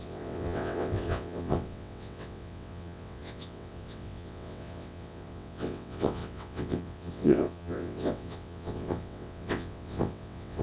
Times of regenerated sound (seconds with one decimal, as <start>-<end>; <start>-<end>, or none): 0.0-10.6